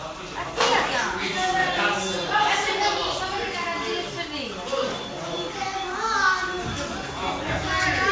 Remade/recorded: recorded